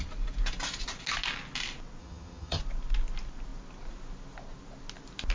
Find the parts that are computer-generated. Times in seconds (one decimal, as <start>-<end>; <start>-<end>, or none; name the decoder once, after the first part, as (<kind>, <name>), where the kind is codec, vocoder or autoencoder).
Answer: 2.0-2.6 (vocoder, HiFi-GAN)